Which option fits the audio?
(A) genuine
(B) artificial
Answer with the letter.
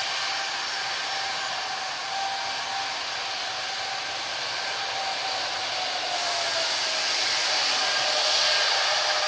A